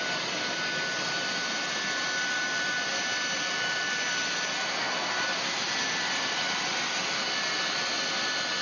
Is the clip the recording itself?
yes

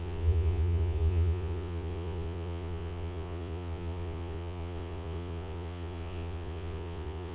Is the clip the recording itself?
no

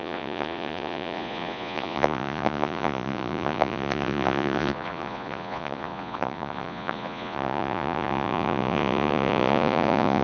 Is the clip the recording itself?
no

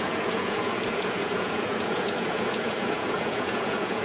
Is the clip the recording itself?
no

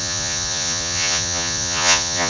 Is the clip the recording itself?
no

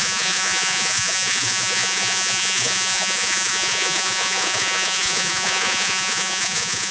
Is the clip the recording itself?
no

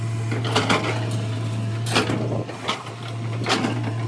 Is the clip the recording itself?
yes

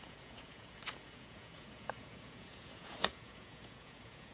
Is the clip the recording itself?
no